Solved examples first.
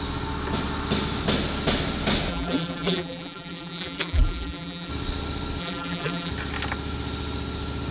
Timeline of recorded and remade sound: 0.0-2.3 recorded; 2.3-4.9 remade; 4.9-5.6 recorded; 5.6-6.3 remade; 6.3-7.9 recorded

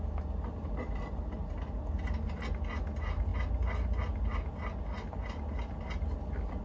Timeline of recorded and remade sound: 0.0-6.6 recorded